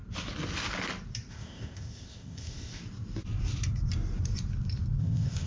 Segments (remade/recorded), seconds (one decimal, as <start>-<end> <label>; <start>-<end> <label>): 0.0-1.3 recorded; 1.3-2.8 remade; 2.8-5.0 recorded; 5.0-5.5 remade